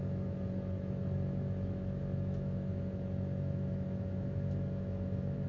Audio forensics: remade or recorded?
remade